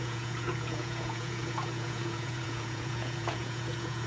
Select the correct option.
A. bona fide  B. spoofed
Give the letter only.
B